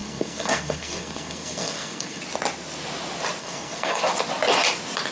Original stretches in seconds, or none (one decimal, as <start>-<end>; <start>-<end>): 2.2-3.4; 4.0-5.1